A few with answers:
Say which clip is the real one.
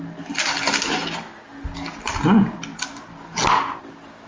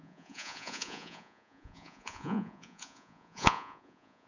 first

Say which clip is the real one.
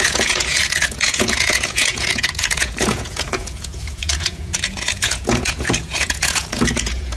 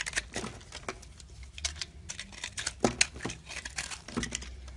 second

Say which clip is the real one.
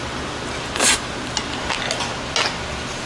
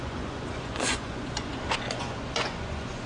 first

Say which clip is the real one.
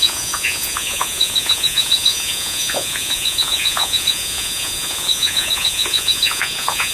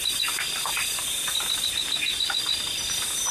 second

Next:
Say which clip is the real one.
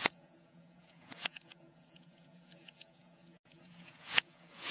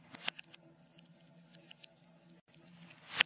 second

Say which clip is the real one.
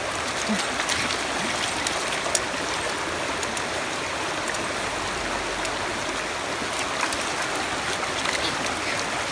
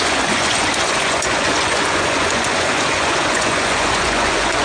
first